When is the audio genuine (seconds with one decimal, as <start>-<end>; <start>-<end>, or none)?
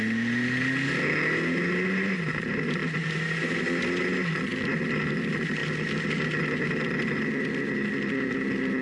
0.0-8.8